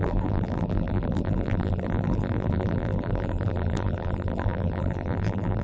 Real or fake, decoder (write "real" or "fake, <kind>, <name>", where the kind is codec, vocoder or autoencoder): fake, vocoder, BigVGAN v2